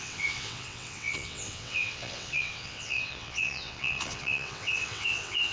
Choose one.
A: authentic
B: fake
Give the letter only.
B